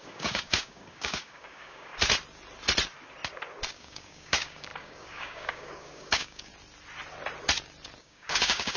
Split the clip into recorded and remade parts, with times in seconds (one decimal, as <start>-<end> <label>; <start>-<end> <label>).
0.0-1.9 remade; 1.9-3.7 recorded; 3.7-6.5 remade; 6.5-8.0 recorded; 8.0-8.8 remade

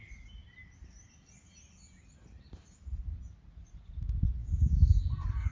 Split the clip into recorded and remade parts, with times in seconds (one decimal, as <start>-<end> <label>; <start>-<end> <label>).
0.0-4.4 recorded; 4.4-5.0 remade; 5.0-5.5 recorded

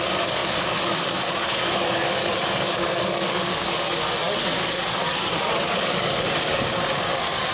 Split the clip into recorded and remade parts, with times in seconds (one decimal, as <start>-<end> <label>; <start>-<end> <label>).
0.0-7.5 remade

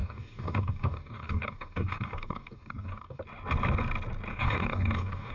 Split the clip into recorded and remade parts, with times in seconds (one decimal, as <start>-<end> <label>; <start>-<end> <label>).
0.0-3.2 remade; 3.2-4.3 recorded; 4.3-5.3 remade

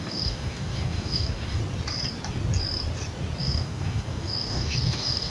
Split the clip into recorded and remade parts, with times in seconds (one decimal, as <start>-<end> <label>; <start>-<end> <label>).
0.0-1.6 remade; 1.6-3.4 recorded; 3.4-5.3 remade

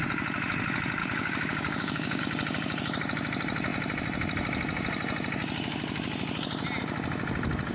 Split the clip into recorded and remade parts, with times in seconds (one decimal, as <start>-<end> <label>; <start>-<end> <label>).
0.0-1.0 recorded; 1.0-2.2 remade; 2.2-7.7 recorded

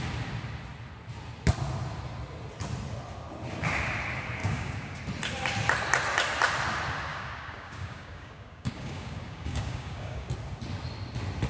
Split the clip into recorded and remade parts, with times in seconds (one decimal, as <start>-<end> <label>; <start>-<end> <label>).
0.0-4.4 recorded; 4.4-5.0 remade; 5.0-7.1 recorded; 7.1-10.3 remade; 10.3-11.5 recorded